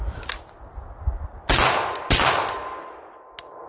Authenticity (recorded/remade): recorded